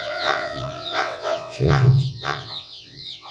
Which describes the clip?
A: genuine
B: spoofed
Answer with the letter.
B